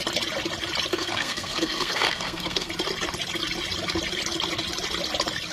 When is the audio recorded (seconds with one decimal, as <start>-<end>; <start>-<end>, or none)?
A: 0.0-0.9; 2.7-5.5